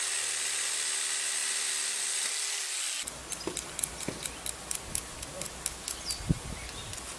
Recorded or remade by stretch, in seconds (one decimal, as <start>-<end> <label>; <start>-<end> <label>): 0.0-7.2 recorded